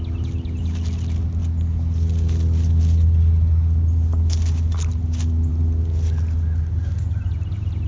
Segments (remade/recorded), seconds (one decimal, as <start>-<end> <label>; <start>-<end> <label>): 0.0-7.9 recorded

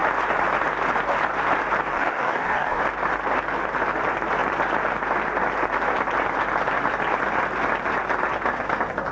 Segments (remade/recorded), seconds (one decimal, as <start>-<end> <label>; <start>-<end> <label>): 0.0-1.9 recorded; 1.9-2.8 remade; 2.8-9.1 recorded